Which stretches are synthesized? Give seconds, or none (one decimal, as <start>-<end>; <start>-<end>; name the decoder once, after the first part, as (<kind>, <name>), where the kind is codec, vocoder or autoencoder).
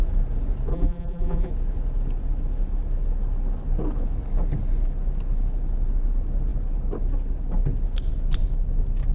0.7-1.5 (vocoder, BigVGAN v2)